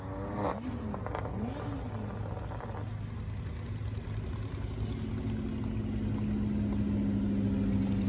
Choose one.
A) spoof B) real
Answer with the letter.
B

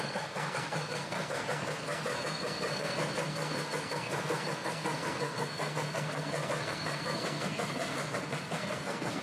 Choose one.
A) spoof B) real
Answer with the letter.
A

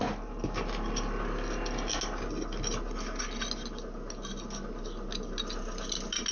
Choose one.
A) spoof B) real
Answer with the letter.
B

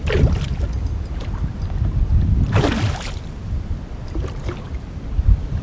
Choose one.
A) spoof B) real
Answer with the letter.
B